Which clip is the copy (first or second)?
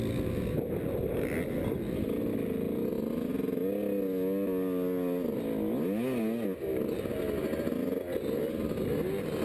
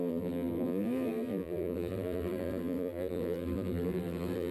second